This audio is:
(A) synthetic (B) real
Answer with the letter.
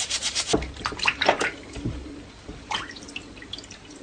A